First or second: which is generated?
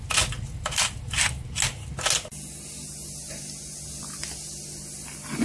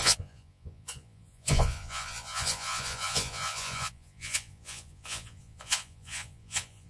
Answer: second